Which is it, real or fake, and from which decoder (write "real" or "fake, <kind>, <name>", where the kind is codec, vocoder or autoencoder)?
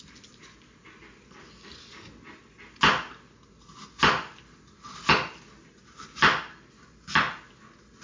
real